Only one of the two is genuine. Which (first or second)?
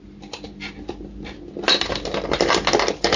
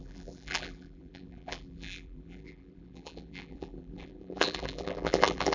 first